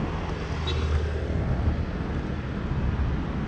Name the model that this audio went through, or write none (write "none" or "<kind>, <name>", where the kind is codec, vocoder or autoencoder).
none